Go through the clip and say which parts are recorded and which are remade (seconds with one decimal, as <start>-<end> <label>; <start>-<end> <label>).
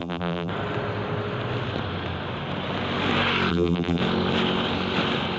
0.0-0.5 remade; 0.5-3.5 recorded; 3.5-4.0 remade; 4.0-5.4 recorded